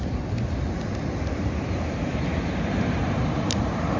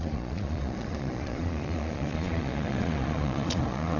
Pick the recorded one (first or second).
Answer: first